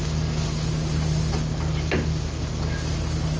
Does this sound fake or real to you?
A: real